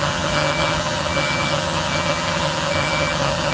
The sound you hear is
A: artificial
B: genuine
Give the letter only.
A